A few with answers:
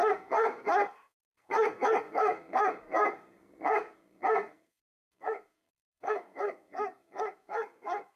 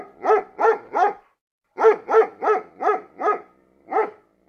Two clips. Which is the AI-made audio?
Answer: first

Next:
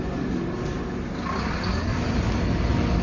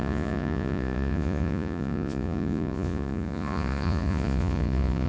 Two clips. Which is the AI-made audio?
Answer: second